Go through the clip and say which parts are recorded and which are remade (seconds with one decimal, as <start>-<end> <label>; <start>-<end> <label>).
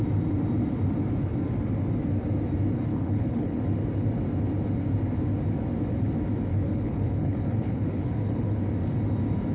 0.0-2.9 recorded; 2.9-3.6 remade; 3.6-6.5 recorded; 6.5-8.6 remade; 8.6-9.5 recorded